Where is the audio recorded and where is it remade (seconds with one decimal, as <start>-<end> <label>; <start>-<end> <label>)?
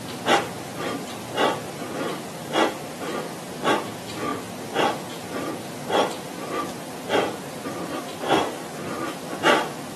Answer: 0.0-10.0 recorded